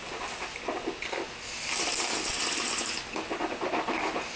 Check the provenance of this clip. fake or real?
real